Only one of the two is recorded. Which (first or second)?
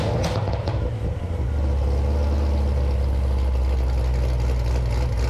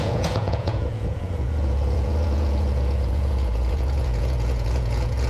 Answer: first